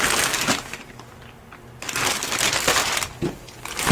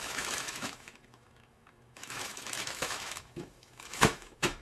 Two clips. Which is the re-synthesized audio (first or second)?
second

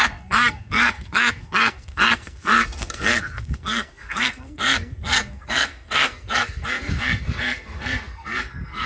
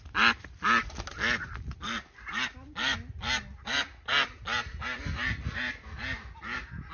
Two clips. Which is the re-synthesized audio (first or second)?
first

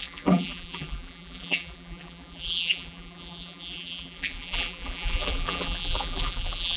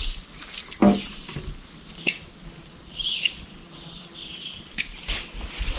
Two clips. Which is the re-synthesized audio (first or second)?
first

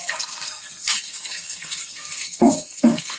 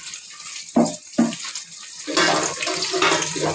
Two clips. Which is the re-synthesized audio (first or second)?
first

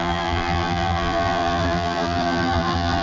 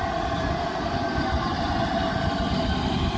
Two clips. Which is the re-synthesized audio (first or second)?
first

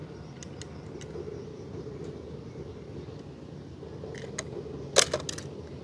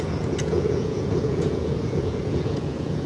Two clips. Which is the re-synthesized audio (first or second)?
second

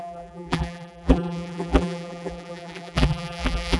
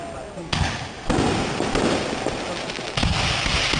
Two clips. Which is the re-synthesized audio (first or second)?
first